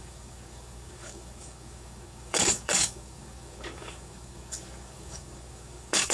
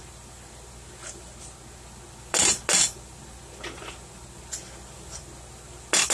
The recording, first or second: second